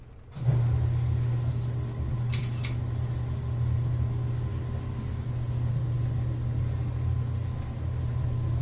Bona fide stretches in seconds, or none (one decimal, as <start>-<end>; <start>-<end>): 0.0-8.6